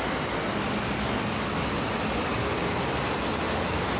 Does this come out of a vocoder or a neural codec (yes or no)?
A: no